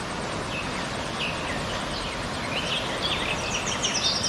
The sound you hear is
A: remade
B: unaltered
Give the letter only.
B